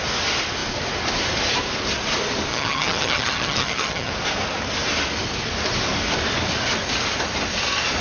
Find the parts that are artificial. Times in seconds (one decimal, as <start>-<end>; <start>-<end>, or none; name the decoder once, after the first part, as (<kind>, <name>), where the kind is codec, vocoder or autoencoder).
2.5-4.1 (vocoder, HiFi-GAN)